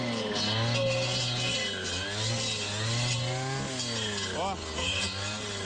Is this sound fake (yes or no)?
no